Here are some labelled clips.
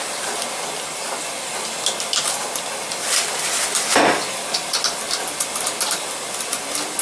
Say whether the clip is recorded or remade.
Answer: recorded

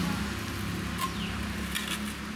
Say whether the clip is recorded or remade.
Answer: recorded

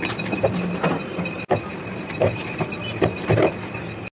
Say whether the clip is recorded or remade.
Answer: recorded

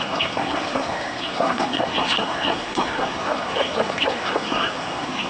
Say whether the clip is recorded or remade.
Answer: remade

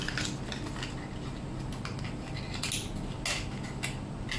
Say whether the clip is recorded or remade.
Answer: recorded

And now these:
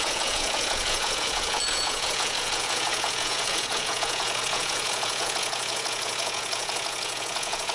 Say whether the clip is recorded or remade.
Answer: remade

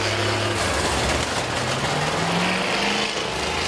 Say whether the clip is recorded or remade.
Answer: recorded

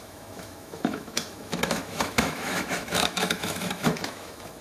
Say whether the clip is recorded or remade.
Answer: remade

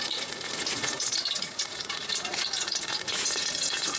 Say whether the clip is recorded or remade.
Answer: remade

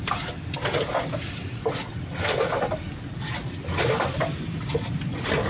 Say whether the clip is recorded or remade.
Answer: recorded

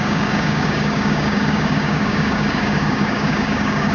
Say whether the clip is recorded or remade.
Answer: remade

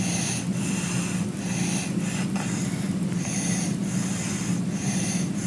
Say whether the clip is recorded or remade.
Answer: recorded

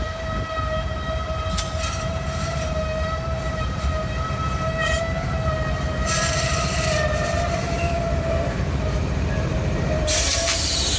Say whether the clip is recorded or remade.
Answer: remade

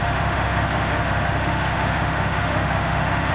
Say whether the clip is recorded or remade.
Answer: remade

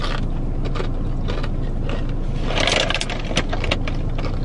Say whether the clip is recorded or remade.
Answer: recorded